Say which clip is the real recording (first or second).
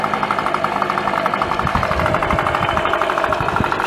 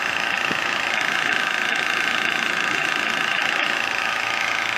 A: first